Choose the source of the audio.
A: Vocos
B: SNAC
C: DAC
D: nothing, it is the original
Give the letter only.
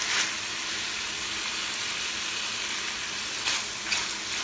D